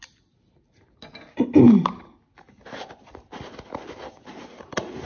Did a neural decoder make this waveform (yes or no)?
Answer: no